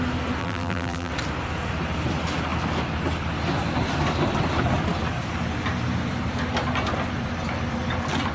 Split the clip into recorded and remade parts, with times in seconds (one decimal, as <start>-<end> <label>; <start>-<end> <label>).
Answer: 0.0-0.4 recorded; 0.4-1.1 remade; 1.1-8.3 recorded